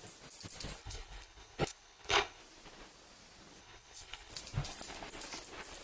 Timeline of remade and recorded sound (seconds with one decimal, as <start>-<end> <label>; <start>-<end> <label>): 0.0-0.8 recorded; 0.8-2.4 remade; 2.4-3.6 recorded; 3.6-4.3 remade; 4.3-5.8 recorded